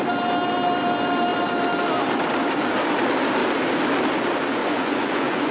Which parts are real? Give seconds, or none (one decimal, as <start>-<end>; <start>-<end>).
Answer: 0.0-4.6